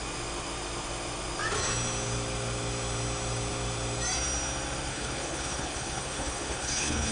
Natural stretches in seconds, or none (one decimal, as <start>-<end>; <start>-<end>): 0.0-4.9